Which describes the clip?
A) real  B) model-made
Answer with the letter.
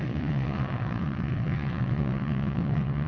B